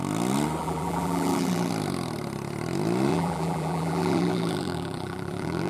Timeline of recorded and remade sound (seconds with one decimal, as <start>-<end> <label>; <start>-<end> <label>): 0.0-0.6 recorded; 0.6-1.7 remade; 1.7-3.1 recorded; 3.1-5.7 remade